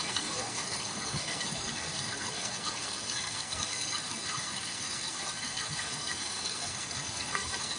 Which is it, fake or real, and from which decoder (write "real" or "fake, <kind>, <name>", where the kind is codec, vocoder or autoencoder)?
fake, codec, SNAC